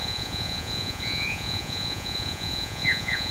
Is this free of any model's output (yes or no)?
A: no